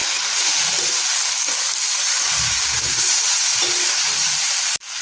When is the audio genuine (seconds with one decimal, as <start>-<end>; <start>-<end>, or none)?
0.0-4.3

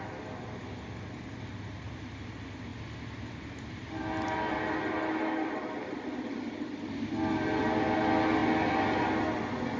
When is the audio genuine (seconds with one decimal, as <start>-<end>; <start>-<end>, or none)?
0.0-9.8

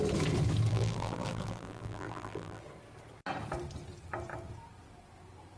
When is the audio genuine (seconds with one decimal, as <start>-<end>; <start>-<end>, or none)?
0.0-0.7; 2.6-5.6

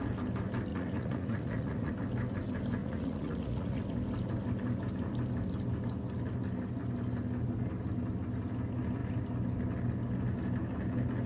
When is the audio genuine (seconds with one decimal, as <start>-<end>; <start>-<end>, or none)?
0.0-0.7; 1.9-2.8; 3.8-11.3